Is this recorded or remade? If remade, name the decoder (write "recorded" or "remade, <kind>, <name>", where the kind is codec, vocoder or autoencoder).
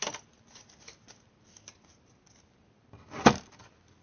recorded